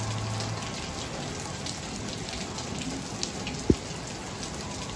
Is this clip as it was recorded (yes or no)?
yes